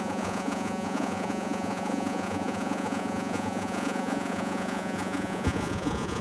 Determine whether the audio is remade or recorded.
remade